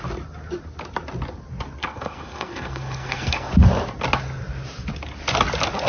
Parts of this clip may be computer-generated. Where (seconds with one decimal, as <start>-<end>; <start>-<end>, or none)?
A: 1.8-3.5